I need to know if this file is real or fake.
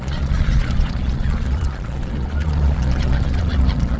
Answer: fake